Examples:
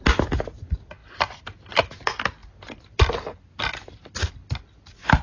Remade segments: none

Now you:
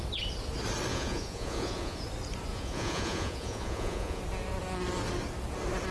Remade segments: 0.9-2.0 (vocoder, Vocos); 2.5-4.2